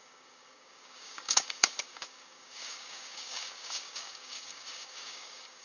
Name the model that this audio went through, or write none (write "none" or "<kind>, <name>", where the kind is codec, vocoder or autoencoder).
codec, DAC